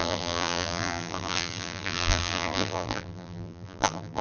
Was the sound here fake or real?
fake